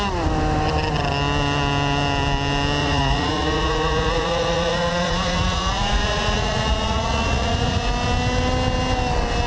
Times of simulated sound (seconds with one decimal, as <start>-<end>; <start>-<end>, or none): 2.8-7.9